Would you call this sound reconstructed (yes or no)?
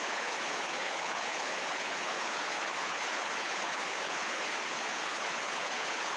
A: yes